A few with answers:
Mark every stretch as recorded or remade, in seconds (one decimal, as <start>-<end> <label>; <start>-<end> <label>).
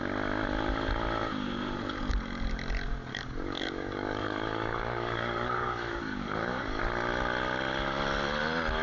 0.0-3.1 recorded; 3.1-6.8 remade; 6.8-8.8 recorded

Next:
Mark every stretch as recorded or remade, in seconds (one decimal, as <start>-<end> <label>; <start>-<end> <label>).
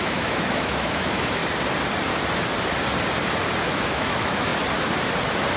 0.0-1.4 remade; 1.4-3.6 recorded; 3.6-4.5 remade; 4.5-5.6 recorded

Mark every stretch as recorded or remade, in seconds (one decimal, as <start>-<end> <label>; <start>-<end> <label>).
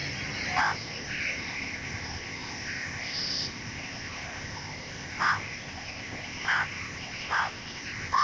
0.0-0.6 recorded; 0.6-8.2 remade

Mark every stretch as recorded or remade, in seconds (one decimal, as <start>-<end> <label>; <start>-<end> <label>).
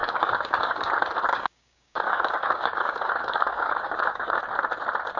0.0-0.9 remade; 0.9-1.3 recorded; 1.3-4.4 remade; 4.4-5.2 recorded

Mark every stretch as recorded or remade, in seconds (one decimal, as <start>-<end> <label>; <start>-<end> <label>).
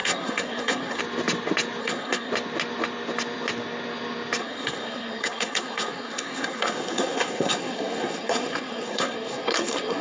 0.0-1.0 remade; 1.0-1.8 recorded; 1.8-2.3 remade; 2.3-4.4 recorded; 4.4-10.0 remade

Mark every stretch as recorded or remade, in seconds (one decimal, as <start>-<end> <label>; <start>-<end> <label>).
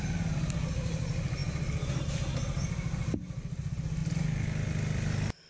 0.0-5.5 recorded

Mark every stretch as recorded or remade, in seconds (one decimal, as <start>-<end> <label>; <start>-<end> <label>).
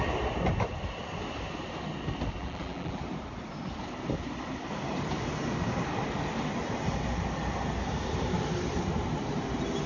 0.0-2.4 recorded; 2.4-3.0 remade; 3.0-9.9 recorded